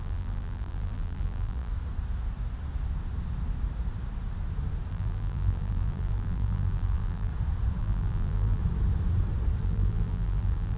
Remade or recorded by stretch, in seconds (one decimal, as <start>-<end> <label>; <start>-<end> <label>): 0.0-1.7 remade; 1.7-4.9 recorded; 4.9-7.3 remade; 7.3-7.8 recorded; 7.8-8.6 remade; 8.6-9.6 recorded; 9.6-10.8 remade